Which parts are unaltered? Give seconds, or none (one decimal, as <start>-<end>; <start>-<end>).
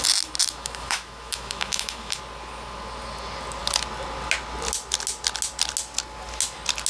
0.0-0.4; 2.2-6.9